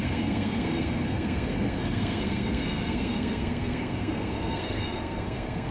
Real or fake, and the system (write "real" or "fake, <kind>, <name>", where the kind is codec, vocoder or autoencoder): fake, codec, SNAC